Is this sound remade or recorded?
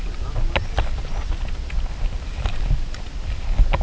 recorded